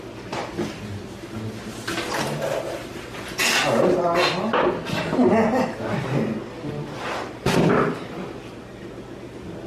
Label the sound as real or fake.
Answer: real